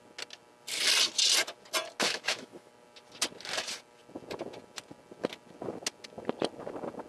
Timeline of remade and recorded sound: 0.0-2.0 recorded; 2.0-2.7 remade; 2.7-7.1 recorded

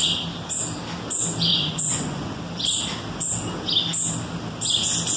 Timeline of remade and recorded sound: 0.0-1.5 recorded; 1.5-2.4 remade; 2.4-5.2 recorded

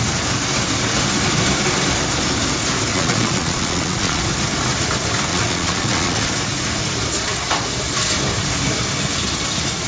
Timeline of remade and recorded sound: 0.0-2.9 recorded; 2.9-4.2 remade; 4.2-5.3 recorded; 5.3-6.3 remade; 6.3-9.9 recorded